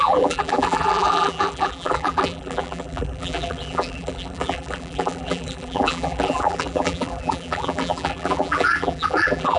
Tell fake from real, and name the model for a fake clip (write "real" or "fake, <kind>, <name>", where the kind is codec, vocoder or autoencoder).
fake, vocoder, BigVGAN v2